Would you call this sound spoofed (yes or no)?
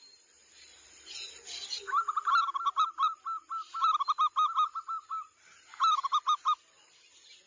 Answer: no